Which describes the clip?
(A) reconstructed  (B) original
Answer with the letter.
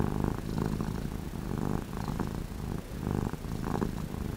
B